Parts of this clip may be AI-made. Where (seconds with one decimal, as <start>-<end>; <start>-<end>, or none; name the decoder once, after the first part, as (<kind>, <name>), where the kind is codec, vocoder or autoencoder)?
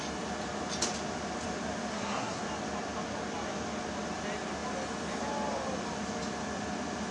1.9-2.4 (codec, SNAC)